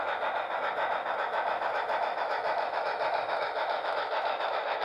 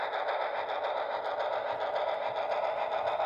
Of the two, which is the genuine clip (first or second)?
second